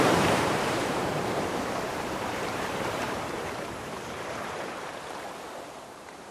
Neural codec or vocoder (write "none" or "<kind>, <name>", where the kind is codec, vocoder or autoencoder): vocoder, BigVGAN v2